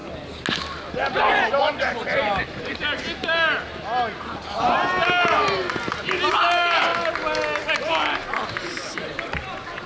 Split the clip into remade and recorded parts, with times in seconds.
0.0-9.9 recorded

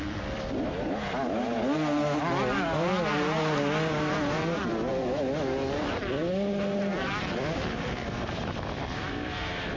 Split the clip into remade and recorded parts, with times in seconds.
0.0-9.8 recorded